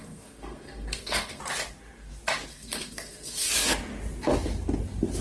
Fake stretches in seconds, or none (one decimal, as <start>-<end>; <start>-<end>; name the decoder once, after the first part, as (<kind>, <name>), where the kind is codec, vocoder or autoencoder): 0.0-1.4 (codec, SNAC); 2.5-3.5